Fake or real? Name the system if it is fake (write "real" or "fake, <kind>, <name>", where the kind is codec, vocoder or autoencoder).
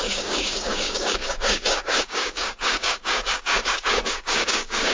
fake, codec, DAC